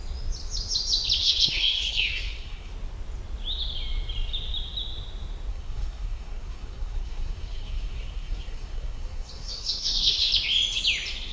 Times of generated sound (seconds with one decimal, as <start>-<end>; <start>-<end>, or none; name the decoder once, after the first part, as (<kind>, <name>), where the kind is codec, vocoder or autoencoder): 1.2-2.7 (codec, SNAC); 5.5-10.3